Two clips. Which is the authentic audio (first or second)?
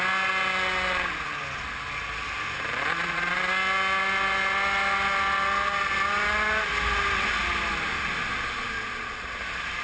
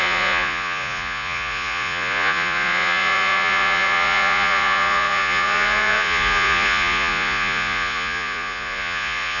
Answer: first